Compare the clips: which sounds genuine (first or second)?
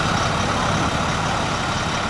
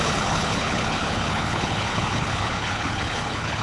first